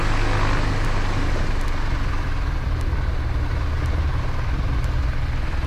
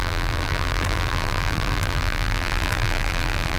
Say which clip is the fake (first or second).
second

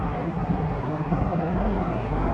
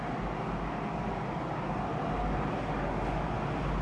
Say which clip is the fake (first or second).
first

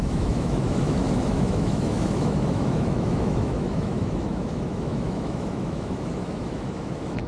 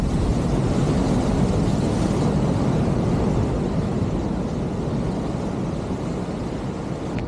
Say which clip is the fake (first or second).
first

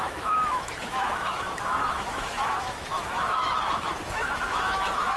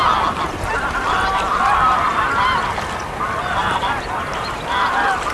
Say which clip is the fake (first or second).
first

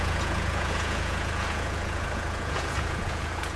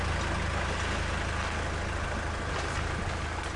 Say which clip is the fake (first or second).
first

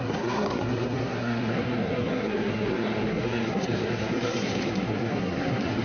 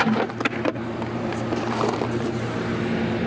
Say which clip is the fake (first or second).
first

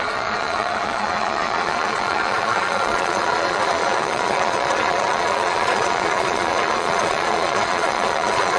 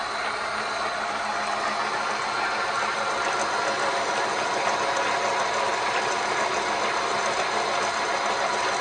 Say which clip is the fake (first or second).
first